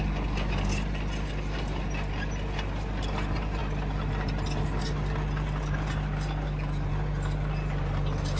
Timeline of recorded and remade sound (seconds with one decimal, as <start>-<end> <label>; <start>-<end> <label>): 0.0-8.4 recorded

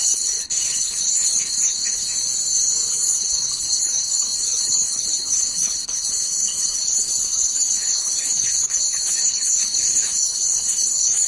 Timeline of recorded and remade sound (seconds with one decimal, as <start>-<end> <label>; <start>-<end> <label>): 0.0-2.1 remade; 2.1-2.9 recorded; 2.9-11.3 remade

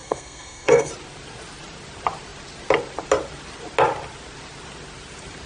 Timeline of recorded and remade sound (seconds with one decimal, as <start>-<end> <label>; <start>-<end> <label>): 0.0-0.9 remade; 0.9-5.5 recorded

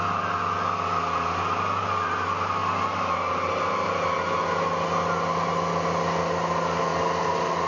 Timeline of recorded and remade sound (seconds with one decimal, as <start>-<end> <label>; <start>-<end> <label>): 0.0-7.7 recorded